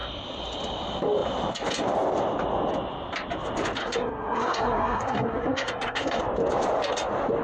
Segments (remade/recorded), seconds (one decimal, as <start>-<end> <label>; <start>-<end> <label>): 0.0-3.8 recorded; 3.8-6.2 remade; 6.2-7.4 recorded